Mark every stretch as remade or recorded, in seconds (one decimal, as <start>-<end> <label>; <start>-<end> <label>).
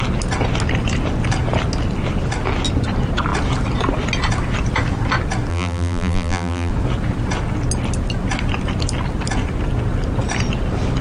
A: 0.0-5.5 recorded; 5.5-6.7 remade; 6.7-11.0 recorded